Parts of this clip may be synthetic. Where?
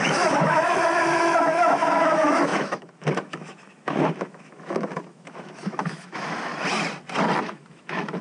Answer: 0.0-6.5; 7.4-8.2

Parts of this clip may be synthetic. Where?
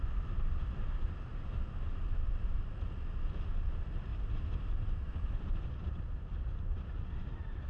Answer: 4.1-7.7